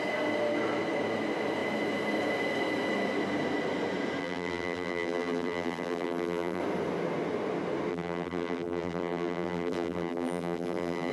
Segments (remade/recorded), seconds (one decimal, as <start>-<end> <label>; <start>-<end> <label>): 0.0-4.2 recorded; 4.2-6.6 remade; 6.6-7.9 recorded; 7.9-11.1 remade